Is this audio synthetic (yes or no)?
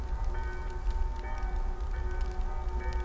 no